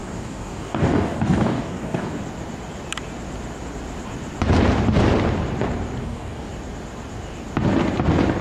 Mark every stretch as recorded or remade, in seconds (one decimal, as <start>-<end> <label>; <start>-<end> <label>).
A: 0.0-2.2 remade; 2.2-6.0 recorded; 6.0-6.5 remade; 6.5-8.4 recorded